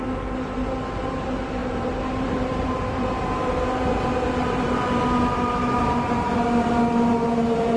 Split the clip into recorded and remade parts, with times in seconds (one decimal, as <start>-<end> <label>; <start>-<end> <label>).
0.0-1.6 recorded; 1.6-6.3 remade; 6.3-7.8 recorded